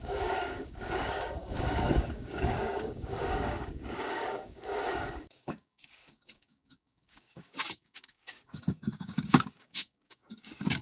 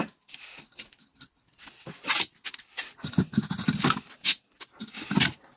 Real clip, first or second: second